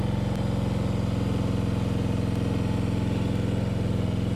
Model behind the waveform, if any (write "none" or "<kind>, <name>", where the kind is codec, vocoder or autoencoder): none